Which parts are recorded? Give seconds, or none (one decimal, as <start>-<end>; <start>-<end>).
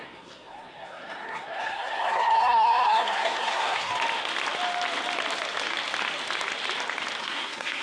3.9-7.2